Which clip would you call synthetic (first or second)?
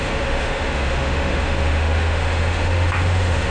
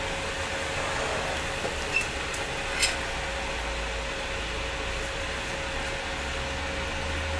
first